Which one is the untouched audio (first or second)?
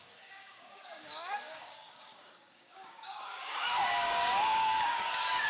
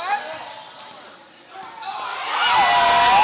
second